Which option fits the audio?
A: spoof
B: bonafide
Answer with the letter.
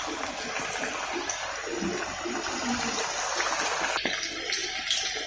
A